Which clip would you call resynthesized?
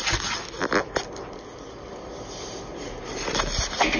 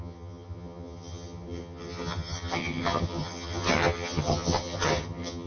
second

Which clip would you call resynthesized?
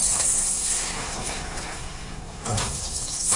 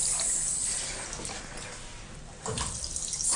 first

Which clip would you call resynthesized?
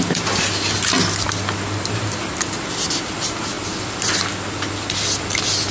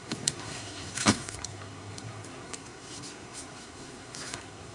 second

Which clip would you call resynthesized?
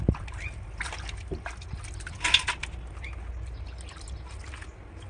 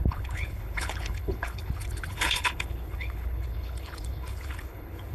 second